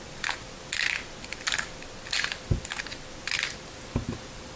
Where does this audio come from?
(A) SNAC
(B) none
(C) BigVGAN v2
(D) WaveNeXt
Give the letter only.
B